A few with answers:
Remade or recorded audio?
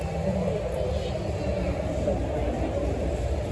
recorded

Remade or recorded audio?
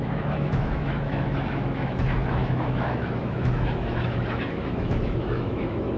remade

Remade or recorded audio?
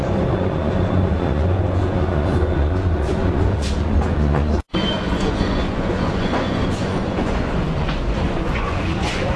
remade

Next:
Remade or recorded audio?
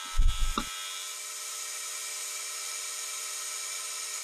recorded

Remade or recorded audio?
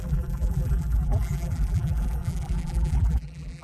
remade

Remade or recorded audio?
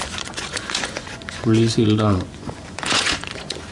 remade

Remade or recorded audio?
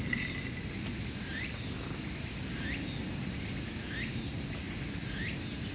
recorded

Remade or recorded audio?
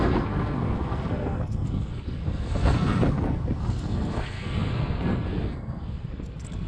remade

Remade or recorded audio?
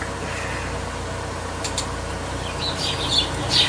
remade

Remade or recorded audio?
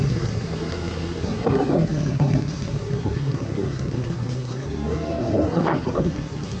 remade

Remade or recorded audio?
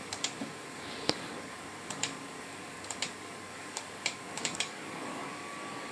remade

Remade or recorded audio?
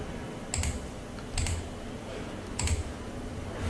recorded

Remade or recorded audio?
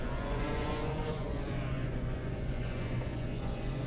remade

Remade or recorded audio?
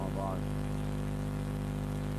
remade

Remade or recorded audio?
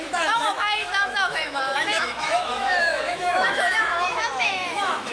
remade